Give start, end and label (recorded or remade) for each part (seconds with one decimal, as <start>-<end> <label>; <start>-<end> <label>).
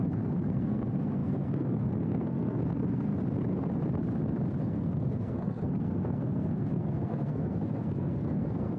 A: 0.0-3.1 remade; 3.1-4.6 recorded; 4.6-8.8 remade